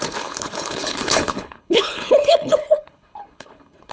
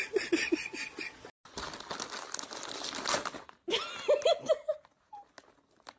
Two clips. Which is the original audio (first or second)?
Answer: second